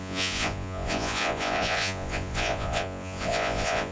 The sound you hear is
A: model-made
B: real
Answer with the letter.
A